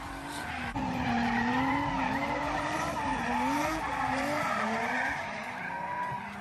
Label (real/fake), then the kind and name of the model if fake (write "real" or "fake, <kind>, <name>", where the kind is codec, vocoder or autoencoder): fake, vocoder, BigVGAN v2